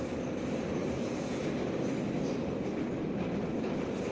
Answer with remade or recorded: recorded